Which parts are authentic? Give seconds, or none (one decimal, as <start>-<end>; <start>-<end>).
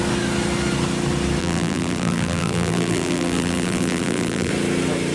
0.0-1.4; 4.5-5.1